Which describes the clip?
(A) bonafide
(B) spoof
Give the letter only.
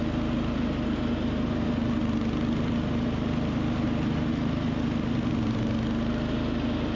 A